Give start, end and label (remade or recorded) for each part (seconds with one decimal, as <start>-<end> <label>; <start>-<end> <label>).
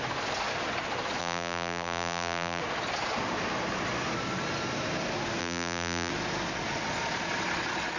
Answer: 0.0-1.2 recorded; 1.2-2.6 remade; 2.6-5.4 recorded; 5.4-6.1 remade; 6.1-8.0 recorded